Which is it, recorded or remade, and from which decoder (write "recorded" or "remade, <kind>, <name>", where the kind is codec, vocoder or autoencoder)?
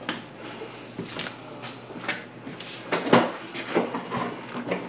recorded